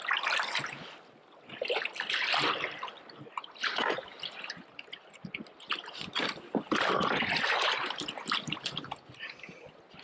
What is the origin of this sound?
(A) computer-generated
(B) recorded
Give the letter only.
B